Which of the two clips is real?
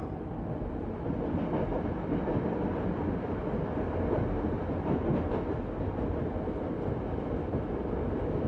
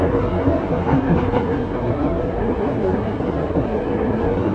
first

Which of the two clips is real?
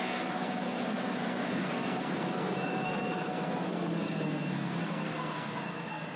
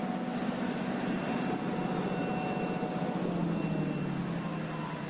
second